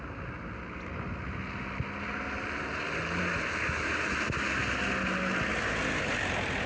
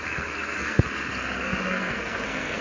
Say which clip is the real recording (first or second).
first